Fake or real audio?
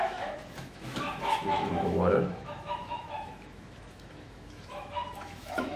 fake